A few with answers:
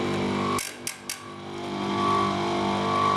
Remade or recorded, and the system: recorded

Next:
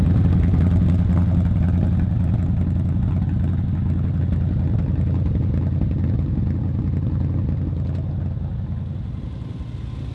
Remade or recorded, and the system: recorded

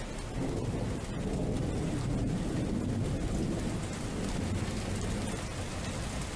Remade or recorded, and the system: recorded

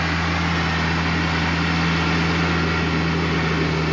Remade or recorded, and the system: recorded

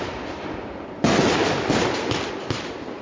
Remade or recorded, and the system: recorded